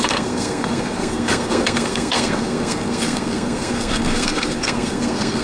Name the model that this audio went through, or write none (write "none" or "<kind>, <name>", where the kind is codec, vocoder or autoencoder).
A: codec, SNAC